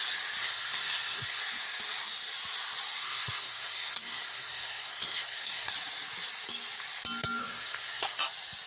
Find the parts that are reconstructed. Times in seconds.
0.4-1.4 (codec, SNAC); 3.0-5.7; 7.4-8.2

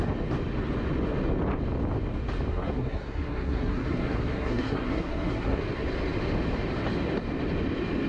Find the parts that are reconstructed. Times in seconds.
2.5-5.6 (codec, SNAC)